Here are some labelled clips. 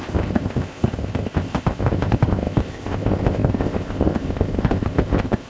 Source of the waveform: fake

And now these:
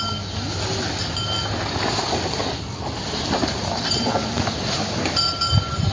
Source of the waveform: real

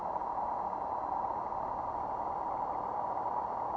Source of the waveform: real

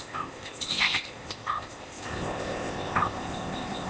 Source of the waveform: fake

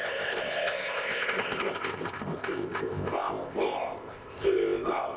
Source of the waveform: fake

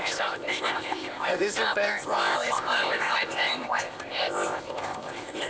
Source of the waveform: fake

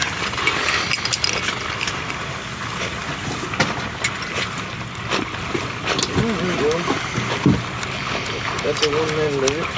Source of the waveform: real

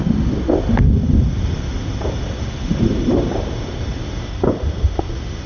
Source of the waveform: real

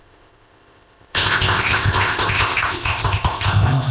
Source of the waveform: fake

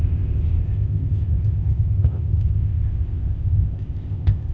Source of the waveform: fake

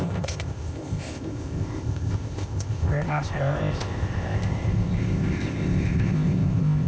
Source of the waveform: fake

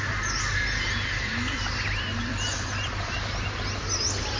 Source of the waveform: real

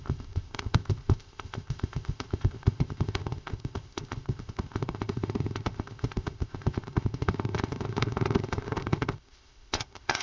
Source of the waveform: fake